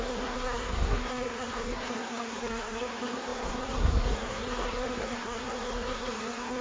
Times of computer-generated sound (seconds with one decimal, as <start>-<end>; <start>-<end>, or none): 0.0-6.6